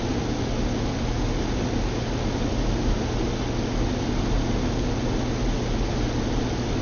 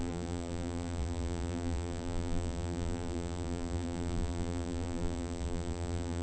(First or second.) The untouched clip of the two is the first